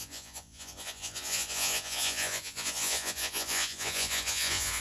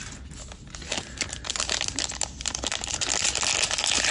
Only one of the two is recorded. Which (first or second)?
second